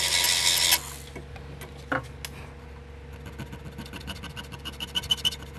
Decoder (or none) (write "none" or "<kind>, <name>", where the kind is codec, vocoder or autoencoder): none